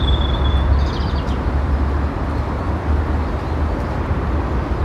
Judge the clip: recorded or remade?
recorded